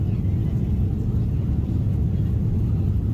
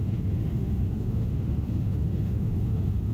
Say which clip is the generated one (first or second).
second